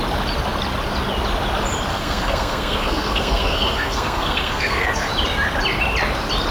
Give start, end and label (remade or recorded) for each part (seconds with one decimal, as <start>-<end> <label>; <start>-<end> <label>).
0.0-1.9 recorded; 1.9-5.1 remade; 5.1-6.5 recorded